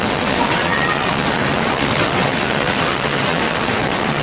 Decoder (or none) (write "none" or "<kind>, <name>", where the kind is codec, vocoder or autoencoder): vocoder, WaveNeXt